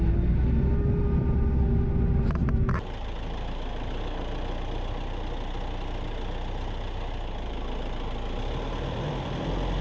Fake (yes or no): no